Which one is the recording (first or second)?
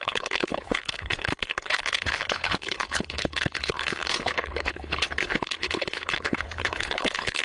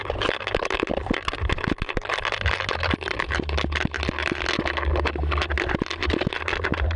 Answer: second